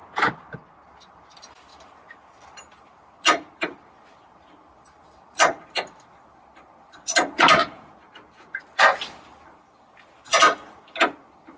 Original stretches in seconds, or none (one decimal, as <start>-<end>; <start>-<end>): 0.0-7.6; 8.6-11.6